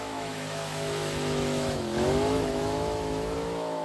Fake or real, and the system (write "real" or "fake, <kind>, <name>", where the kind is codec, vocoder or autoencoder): fake, autoencoder, DAC-VAE